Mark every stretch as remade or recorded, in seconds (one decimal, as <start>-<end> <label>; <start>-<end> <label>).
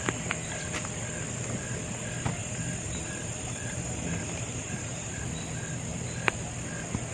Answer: 0.0-2.4 recorded; 2.4-5.2 remade; 5.2-7.1 recorded